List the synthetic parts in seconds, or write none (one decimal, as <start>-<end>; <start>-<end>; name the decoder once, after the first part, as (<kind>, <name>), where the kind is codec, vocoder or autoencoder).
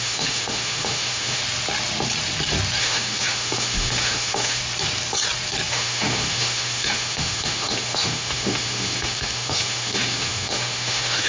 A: 0.0-1.4 (autoencoder, DAC-VAE); 2.8-4.6; 5.7-11.3